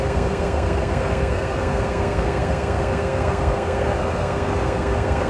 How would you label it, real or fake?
fake